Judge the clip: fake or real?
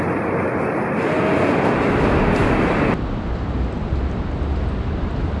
real